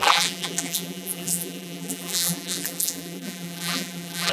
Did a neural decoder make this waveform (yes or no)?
yes